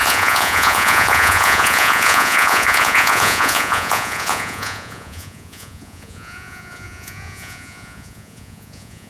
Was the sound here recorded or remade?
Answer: remade